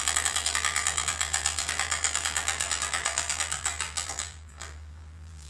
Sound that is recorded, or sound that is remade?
remade